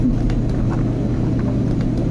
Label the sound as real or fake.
real